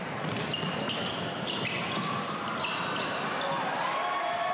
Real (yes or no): yes